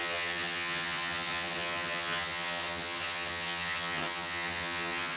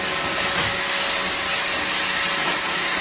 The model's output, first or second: first